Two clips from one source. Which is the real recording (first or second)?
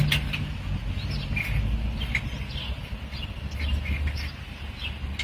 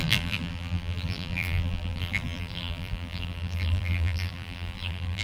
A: first